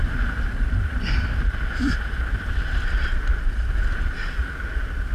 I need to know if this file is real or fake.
real